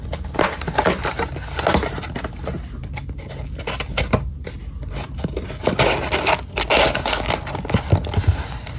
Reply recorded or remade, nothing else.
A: recorded